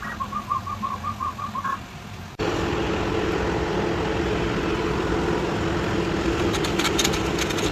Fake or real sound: real